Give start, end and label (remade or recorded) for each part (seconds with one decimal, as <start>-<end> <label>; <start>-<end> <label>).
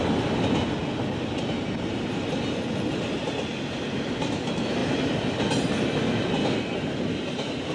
0.0-7.7 recorded